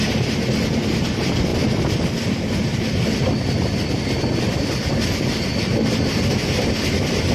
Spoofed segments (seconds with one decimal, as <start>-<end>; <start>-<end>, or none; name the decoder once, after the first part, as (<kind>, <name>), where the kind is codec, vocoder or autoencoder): none